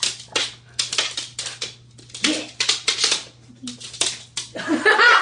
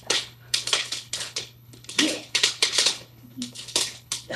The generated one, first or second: second